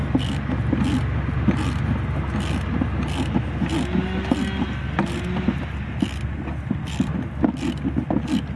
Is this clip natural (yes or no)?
yes